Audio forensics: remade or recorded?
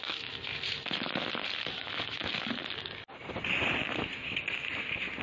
recorded